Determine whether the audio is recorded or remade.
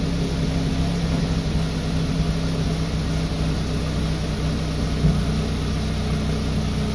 recorded